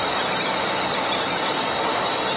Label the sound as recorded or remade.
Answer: recorded